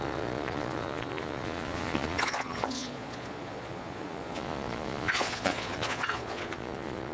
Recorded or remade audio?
remade